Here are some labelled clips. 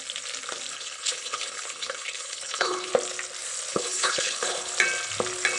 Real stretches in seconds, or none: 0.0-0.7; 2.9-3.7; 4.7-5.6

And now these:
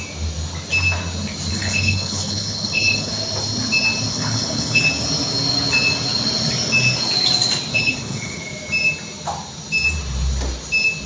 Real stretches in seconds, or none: 0.0-1.5; 3.1-4.1; 4.8-7.7; 8.4-11.1

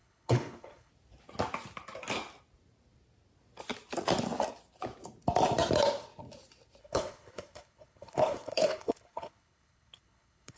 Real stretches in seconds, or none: 0.9-6.8

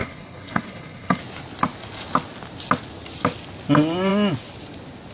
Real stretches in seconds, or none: 1.2-5.1

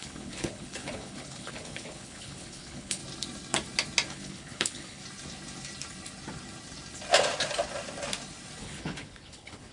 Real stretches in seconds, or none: 3.0-4.1; 5.0-8.6